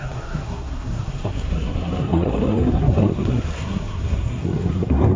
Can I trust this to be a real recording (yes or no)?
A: no